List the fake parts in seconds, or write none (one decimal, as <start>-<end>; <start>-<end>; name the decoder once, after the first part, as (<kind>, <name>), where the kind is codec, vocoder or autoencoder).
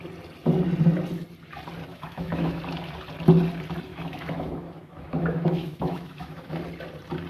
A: 1.9-2.6 (autoencoder, DAC-VAE); 3.9-6.5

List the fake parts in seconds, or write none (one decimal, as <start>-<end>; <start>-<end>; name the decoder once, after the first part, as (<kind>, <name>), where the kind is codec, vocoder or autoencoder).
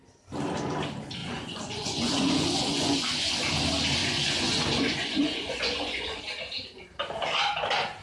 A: 1.2-3.3 (vocoder, Vocos); 4.0-6.2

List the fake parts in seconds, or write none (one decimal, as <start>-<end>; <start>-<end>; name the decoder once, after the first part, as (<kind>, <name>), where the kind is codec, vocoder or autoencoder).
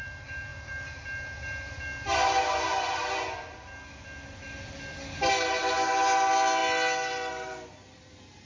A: none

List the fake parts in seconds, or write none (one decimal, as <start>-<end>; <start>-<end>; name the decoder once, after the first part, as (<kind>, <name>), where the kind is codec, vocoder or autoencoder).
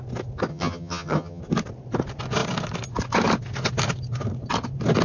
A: 0.5-1.4 (vocoder, HiFi-GAN)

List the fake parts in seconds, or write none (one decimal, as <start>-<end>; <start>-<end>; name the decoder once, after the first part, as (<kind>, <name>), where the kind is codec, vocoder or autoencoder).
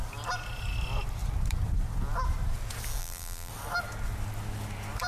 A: 3.0-3.5 (vocoder, BigVGAN v2)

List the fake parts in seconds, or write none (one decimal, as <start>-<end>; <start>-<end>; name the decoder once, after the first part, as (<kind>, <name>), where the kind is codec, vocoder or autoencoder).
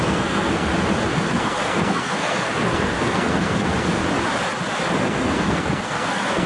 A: 0.0-0.7 (codec, SNAC); 1.3-4.0; 5.0-6.5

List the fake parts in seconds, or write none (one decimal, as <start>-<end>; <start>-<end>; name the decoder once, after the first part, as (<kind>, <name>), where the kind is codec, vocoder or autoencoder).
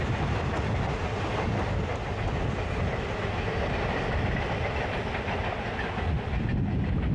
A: none